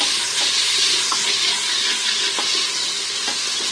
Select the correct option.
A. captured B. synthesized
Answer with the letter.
A